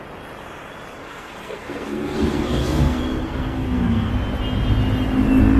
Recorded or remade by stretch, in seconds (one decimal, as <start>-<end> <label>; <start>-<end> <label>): 0.0-1.0 recorded; 1.0-4.1 remade; 4.1-5.6 recorded